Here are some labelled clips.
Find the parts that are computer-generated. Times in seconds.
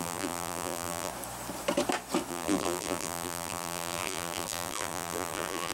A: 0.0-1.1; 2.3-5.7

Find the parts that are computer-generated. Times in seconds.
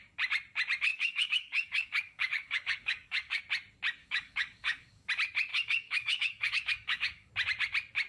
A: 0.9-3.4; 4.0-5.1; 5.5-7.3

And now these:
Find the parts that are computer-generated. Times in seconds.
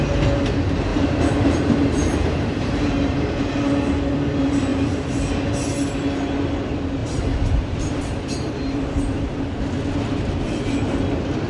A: 0.9-3.4; 4.7-5.3; 7.0-9.5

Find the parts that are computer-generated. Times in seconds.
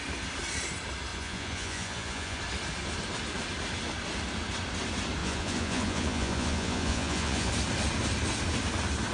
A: 1.1-2.4; 5.2-7.5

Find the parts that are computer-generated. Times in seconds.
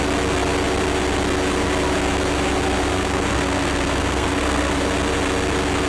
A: 2.9-4.7